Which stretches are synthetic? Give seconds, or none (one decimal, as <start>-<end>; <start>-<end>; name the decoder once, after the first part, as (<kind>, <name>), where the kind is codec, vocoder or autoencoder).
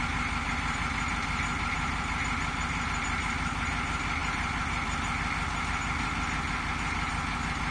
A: none